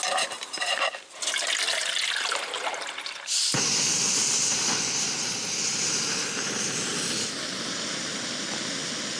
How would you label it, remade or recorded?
recorded